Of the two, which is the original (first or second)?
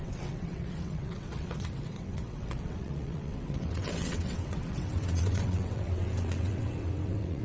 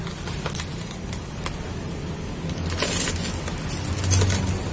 second